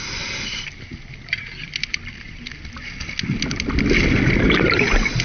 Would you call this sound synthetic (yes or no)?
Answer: no